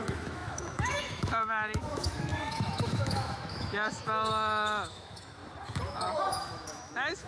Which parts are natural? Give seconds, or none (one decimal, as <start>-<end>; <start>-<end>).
5.4-5.9